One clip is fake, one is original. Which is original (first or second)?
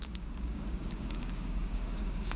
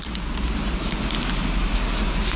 second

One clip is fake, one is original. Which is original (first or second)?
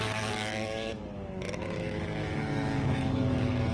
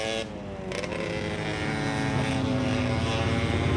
second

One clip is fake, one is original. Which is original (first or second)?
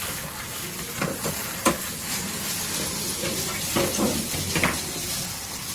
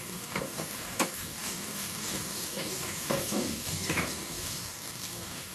first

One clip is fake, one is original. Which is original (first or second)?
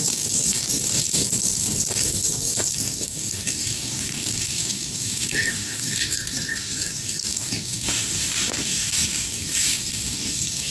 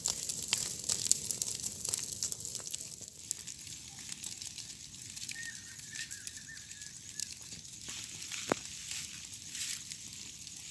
second